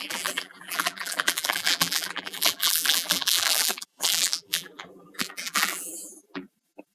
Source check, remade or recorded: remade